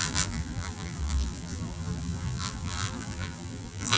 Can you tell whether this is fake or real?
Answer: fake